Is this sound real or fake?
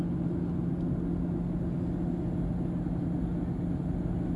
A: real